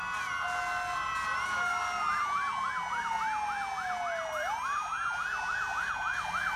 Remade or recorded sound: recorded